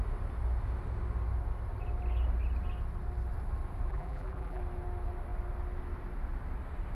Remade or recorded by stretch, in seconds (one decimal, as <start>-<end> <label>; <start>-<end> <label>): 0.0-3.9 recorded; 3.9-4.6 remade; 4.6-6.9 recorded